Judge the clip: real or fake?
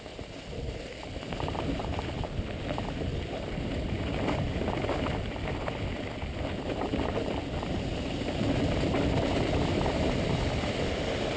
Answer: real